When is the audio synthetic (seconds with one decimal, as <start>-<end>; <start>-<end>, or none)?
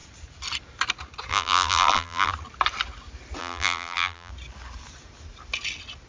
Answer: 1.3-2.3; 3.4-4.3